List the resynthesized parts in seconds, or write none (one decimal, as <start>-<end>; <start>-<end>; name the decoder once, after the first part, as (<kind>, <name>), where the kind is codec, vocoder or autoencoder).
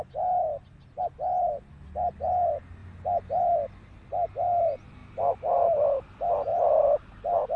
2.8-3.4 (vocoder, BigVGAN v2); 6.5-7.1